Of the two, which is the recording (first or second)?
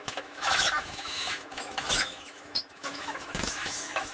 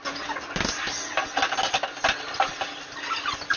second